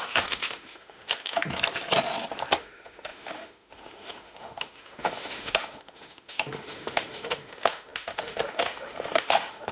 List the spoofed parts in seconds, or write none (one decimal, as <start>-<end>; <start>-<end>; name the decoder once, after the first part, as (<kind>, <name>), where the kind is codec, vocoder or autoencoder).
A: 0.0-1.4 (autoencoder, DAC-VAE); 2.6-9.7